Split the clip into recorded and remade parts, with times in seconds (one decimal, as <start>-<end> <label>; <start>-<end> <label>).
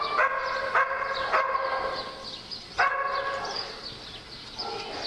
0.0-5.1 recorded